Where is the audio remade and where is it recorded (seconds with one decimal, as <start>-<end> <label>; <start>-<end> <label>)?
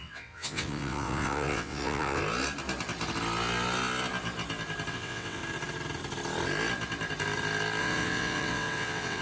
0.0-2.2 remade; 2.2-4.9 recorded; 4.9-5.4 remade; 5.4-7.8 recorded; 7.8-9.2 remade